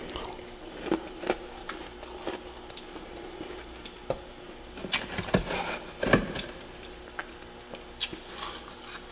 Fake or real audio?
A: real